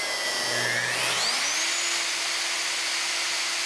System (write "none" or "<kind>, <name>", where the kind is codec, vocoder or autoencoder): none